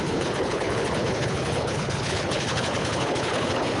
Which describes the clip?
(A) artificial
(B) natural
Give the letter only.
A